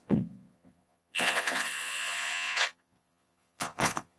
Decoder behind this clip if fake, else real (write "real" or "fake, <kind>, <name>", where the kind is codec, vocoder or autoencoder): fake, vocoder, Vocos